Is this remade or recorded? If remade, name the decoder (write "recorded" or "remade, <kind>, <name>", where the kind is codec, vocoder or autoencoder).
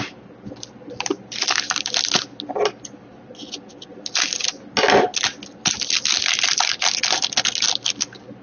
recorded